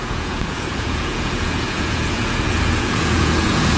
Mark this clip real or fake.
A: fake